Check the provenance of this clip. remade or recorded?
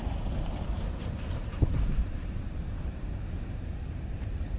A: remade